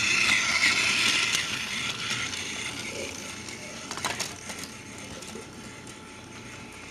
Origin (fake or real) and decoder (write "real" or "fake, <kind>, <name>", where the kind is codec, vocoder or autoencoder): real